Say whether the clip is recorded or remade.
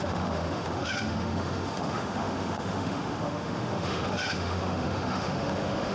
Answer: remade